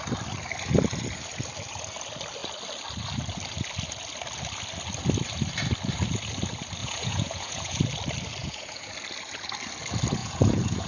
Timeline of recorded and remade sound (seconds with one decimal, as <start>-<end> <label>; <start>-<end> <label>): 0.0-6.8 recorded; 6.8-7.8 remade; 7.8-8.4 recorded; 8.4-8.9 remade; 8.9-10.2 recorded; 10.2-10.9 remade